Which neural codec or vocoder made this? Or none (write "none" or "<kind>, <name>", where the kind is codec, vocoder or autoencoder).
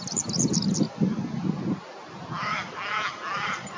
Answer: none